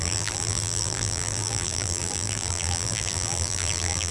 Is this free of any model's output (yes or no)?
no